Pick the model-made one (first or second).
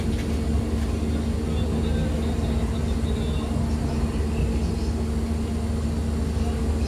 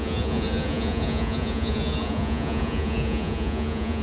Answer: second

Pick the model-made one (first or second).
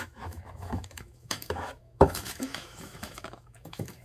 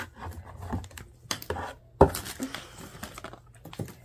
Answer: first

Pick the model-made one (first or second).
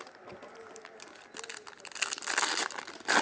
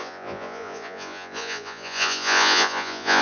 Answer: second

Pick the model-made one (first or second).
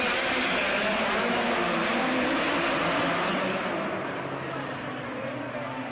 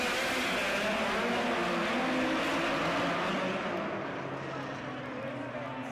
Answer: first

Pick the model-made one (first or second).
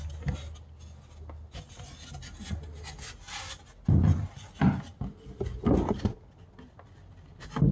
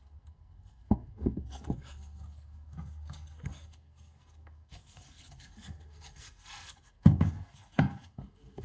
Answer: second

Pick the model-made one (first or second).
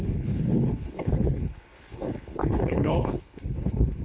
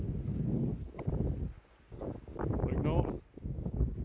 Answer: first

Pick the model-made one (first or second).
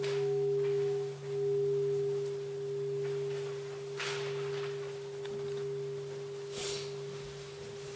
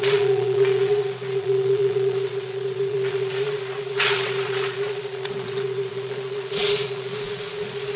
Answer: second